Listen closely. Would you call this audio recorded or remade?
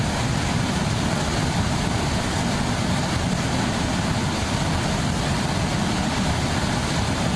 recorded